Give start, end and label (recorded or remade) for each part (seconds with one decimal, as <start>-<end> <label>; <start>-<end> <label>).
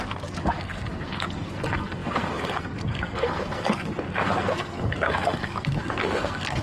0.0-6.6 remade